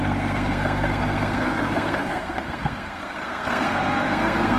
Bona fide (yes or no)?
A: no